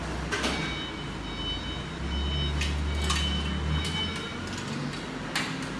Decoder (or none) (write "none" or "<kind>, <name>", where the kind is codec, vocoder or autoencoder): none